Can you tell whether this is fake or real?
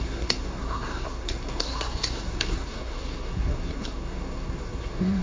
fake